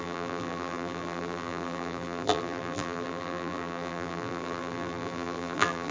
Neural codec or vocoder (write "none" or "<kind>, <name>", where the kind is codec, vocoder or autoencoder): vocoder, BigVGAN v2